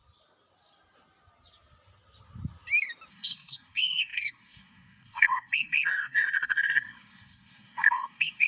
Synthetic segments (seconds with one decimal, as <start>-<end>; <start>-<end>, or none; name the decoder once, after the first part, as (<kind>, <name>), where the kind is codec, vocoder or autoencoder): 3.1-8.5 (codec, SNAC)